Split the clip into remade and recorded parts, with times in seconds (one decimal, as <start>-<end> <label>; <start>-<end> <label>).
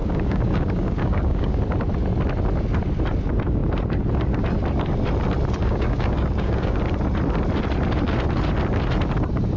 0.0-1.6 remade; 1.6-5.6 recorded; 5.6-6.8 remade; 6.8-9.6 recorded